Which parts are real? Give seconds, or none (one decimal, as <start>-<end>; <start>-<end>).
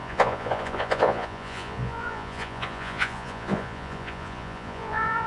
none